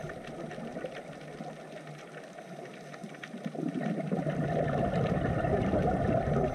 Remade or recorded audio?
recorded